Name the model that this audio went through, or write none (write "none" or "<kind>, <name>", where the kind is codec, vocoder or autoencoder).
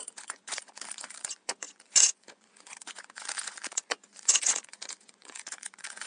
vocoder, Vocos